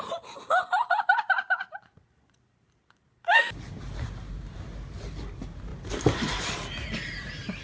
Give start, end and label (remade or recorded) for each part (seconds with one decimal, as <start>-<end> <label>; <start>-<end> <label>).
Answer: 0.0-0.6 recorded; 0.6-3.4 remade; 3.4-5.7 recorded; 5.7-6.4 remade; 6.4-7.6 recorded